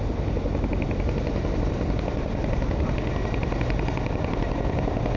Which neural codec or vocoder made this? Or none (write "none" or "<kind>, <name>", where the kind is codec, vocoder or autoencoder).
none